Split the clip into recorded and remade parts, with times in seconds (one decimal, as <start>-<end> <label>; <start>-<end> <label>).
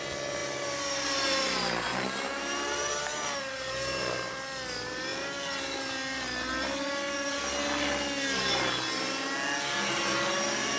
0.0-10.8 recorded